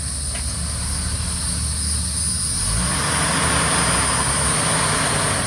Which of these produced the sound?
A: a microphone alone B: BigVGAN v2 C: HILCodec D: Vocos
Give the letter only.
A